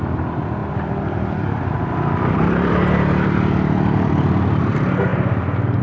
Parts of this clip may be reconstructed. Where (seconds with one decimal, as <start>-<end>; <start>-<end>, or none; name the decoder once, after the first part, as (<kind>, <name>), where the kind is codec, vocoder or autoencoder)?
0.6-4.1 (vocoder, BigVGAN v2)